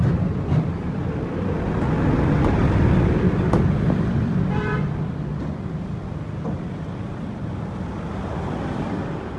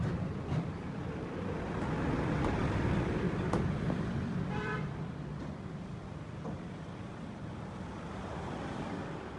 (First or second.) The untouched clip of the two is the first